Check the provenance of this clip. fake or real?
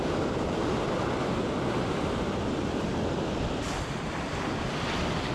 real